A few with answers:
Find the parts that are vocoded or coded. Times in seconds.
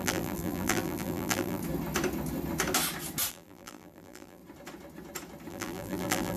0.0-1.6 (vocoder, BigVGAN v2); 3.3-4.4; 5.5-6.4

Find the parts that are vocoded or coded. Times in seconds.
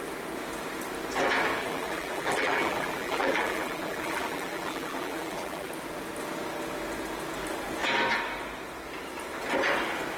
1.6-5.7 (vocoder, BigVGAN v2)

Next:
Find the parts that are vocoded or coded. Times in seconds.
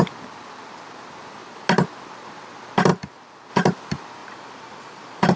4.2-5.4 (vocoder, BigVGAN v2)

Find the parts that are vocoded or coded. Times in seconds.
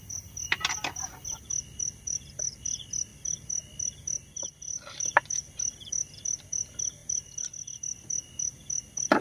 0.0-3.1 (vocoder, BigVGAN v2); 4.5-7.0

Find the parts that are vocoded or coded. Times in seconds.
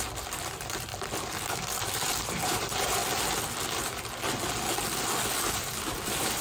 0.0-0.9 (vocoder, BigVGAN v2); 1.5-3.0; 5.4-6.4